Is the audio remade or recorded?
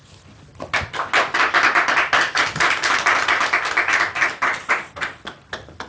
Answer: recorded